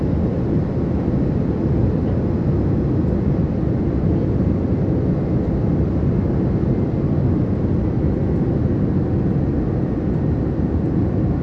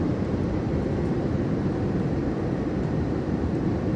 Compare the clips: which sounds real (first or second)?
first